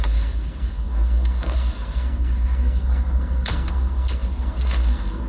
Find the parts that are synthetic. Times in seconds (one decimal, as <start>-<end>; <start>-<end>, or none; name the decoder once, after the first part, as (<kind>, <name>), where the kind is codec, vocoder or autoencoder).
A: 0.0-5.3 (codec, SNAC)

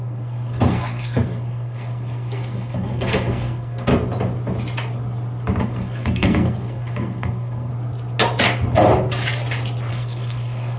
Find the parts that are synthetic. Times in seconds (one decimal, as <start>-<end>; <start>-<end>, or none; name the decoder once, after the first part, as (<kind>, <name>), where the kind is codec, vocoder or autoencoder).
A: 0.0-3.9 (codec, SNAC); 5.6-7.7; 9.9-10.8

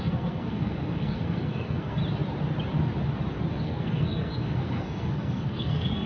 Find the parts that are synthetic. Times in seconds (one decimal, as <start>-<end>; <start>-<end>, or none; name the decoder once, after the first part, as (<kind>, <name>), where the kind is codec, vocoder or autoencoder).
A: 0.0-2.0 (codec, SNAC); 3.5-6.1

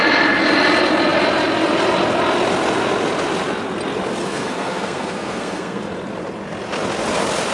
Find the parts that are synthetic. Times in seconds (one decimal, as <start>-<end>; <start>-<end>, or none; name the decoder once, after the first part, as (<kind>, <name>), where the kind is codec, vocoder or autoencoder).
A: 4.2-5.8 (codec, SNAC)